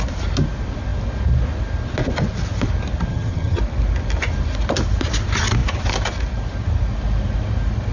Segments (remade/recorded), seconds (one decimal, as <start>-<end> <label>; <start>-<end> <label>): 0.0-3.1 recorded; 3.1-3.6 remade; 3.6-7.9 recorded